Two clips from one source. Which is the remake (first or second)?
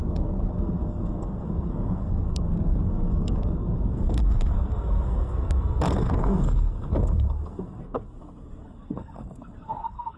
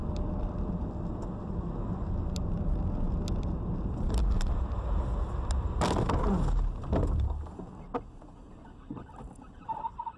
first